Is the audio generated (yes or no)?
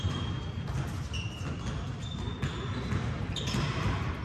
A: no